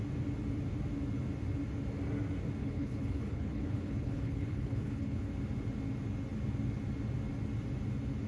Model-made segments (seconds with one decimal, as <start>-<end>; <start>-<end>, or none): 2.6-5.3